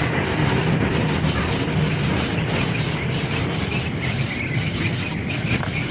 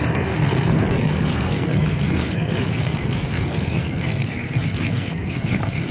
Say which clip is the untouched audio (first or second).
first